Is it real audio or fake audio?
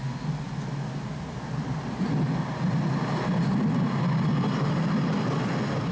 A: real